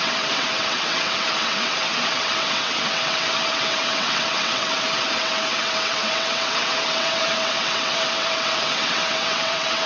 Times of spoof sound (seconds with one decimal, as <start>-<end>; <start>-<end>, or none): 0.0-9.9